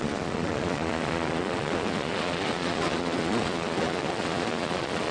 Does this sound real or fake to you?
fake